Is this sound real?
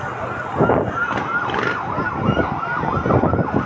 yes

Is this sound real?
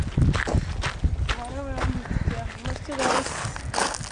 yes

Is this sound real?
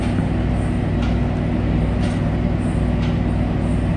yes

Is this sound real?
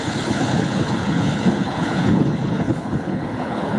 no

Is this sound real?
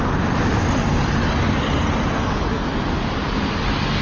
yes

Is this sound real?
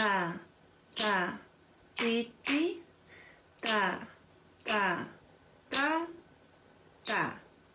yes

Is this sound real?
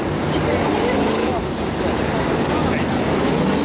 yes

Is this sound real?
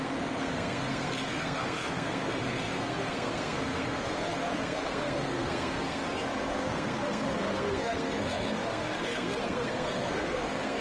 no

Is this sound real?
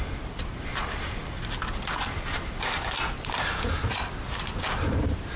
yes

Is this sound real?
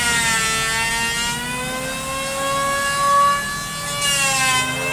yes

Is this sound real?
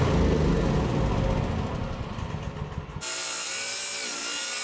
yes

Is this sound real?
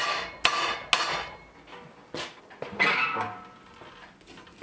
yes